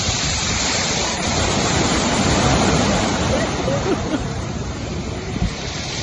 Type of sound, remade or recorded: remade